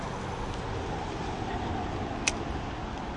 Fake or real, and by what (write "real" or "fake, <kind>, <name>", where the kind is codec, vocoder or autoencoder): real